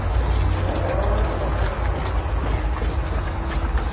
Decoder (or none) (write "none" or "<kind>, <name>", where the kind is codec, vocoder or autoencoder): none